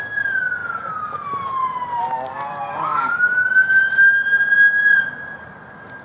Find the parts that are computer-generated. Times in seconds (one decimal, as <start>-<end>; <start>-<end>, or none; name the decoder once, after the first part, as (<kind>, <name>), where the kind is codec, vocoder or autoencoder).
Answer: none